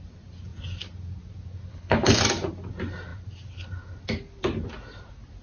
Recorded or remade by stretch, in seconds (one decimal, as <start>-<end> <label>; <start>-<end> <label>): 0.0-1.7 recorded; 1.7-2.2 remade; 2.2-5.4 recorded